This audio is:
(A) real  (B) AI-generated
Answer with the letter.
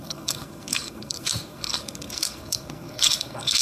B